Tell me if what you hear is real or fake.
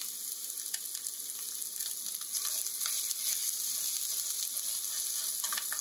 real